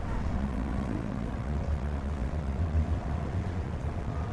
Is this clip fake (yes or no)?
yes